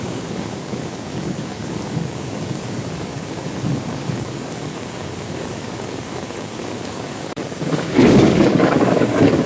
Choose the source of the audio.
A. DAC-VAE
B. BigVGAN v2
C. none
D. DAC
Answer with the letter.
D